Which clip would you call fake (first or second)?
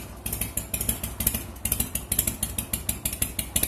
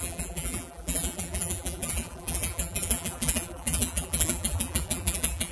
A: second